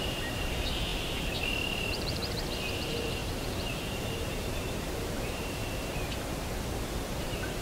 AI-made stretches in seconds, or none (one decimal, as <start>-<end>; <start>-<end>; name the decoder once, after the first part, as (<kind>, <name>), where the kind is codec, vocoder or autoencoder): 0.0-2.2 (vocoder, BigVGAN v2); 2.8-5.6; 7.0-7.6